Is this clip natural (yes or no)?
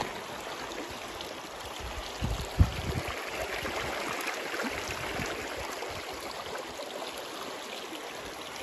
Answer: yes